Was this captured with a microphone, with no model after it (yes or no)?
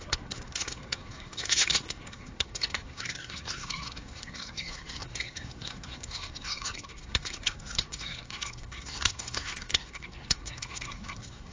no